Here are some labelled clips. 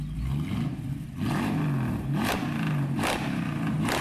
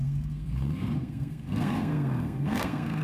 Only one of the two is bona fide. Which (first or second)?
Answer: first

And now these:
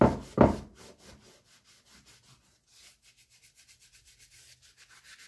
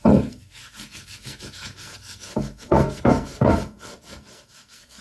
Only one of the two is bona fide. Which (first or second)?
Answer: first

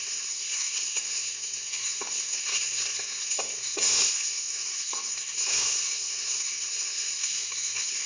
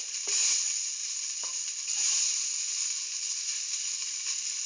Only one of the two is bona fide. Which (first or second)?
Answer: second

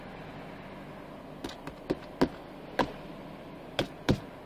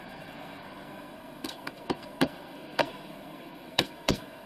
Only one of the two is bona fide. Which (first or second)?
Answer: first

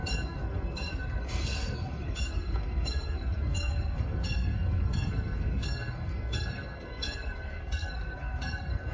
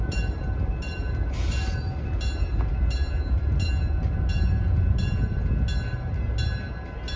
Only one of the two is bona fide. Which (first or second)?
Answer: second